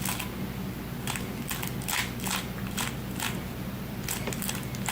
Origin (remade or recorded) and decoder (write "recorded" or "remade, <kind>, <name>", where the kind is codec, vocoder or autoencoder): recorded